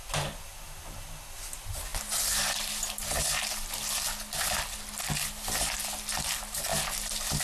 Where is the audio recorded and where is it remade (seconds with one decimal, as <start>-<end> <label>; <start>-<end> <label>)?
0.0-7.4 recorded